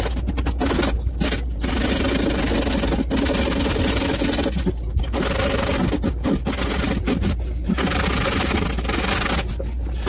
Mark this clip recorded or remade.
recorded